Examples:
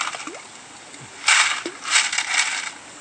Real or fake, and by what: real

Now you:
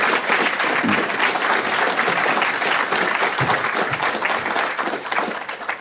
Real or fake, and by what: real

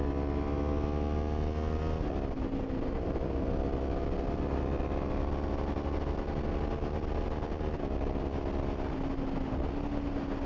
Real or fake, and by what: real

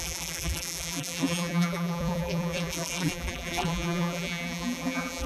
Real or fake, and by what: fake, vocoder, BigVGAN v2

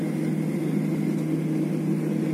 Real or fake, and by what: real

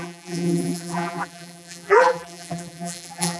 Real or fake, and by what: fake, vocoder, BigVGAN v2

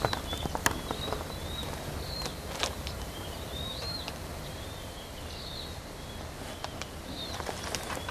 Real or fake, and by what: fake, vocoder, BigVGAN v2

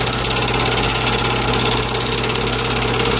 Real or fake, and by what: real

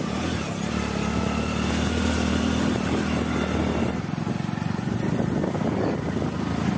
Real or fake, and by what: real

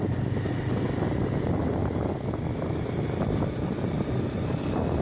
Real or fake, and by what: real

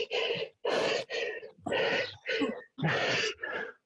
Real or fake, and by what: real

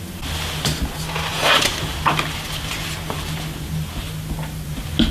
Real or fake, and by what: real